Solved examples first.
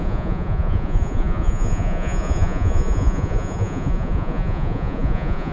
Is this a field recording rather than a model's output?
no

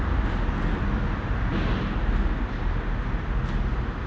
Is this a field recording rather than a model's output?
yes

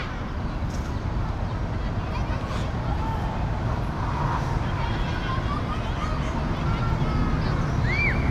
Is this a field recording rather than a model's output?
yes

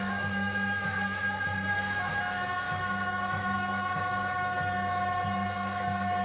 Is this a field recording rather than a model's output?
no